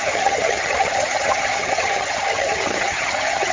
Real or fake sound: fake